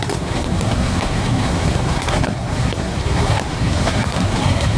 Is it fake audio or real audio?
fake